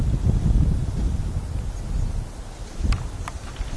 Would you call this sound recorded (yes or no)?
yes